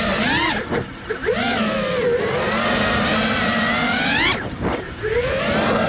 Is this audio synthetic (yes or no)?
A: no